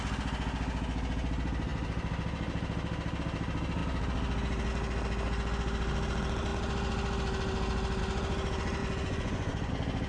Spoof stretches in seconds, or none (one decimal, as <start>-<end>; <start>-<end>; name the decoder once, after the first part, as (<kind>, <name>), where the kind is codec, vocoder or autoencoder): 8.8-9.7 (vocoder, Vocos)